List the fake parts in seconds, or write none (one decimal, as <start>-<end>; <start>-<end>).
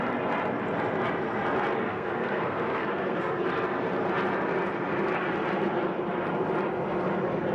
1.9-3.4